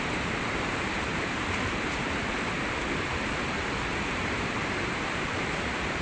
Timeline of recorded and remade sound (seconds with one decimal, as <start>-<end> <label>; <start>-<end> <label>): 0.0-6.0 remade